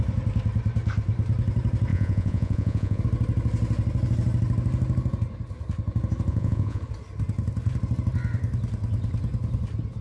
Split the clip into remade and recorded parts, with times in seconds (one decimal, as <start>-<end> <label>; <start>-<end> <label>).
0.0-1.9 recorded; 1.9-3.0 remade; 3.0-6.3 recorded; 6.3-6.8 remade; 6.8-10.0 recorded